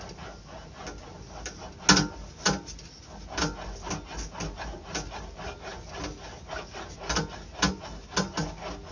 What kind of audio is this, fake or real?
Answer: real